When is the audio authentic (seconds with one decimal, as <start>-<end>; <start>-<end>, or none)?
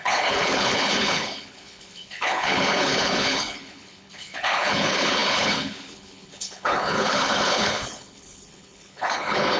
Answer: none